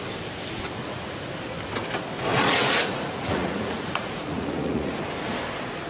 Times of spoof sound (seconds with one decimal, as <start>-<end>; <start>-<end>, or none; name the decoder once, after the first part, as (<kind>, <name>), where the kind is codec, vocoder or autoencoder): 0.8-1.3 (vocoder, Vocos); 2.3-5.0